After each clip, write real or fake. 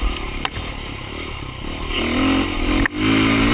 real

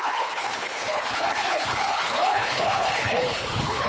fake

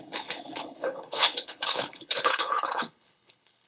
fake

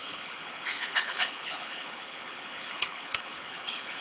fake